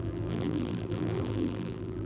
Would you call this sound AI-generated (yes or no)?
yes